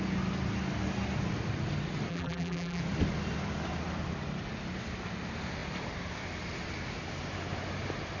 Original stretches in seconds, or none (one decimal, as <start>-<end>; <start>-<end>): 0.0-2.1; 2.8-8.2